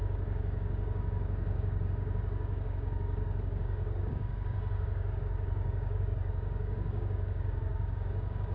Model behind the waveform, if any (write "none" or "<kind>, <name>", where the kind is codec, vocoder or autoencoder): codec, DAC